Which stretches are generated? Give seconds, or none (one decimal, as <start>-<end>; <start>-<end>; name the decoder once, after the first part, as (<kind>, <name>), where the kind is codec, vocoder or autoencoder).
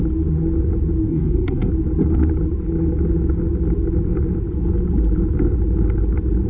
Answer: 1.1-1.7 (codec, SNAC)